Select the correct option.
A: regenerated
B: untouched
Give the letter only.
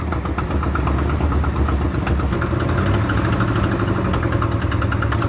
B